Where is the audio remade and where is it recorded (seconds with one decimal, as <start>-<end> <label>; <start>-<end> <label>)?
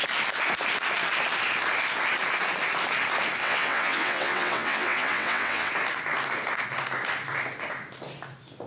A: 0.0-3.4 recorded; 3.4-5.7 remade; 5.7-8.7 recorded